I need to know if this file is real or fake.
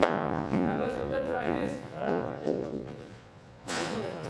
fake